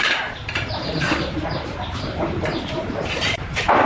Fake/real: fake